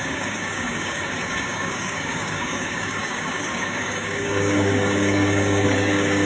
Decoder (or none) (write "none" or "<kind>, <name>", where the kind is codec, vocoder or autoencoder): codec, DAC